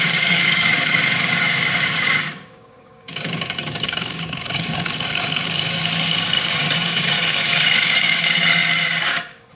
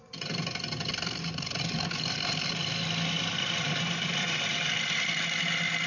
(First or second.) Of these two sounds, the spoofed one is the first